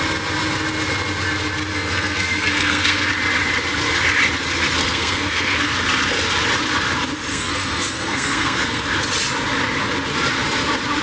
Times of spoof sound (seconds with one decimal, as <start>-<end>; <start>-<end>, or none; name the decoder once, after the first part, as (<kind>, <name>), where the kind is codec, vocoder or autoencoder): 1.7-3.1 (codec, SNAC); 4.8-5.7; 7.3-8.8